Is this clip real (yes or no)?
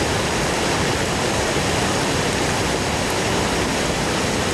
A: yes